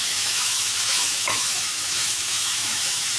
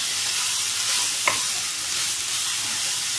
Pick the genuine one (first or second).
second